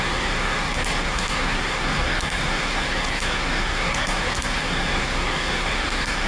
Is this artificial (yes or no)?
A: yes